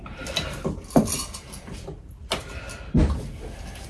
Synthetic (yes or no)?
no